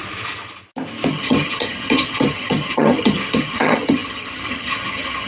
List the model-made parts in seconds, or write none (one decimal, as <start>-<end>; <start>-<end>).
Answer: 1.1-5.3